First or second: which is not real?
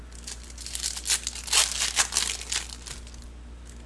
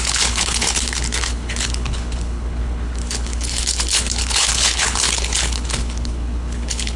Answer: second